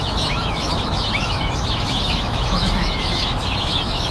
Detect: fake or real fake